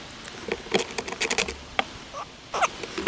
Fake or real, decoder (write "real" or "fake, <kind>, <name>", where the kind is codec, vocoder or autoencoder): real